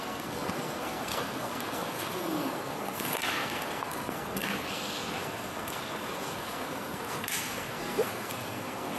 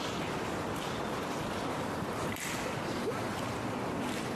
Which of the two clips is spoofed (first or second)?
first